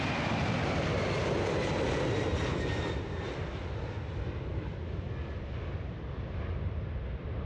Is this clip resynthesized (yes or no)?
no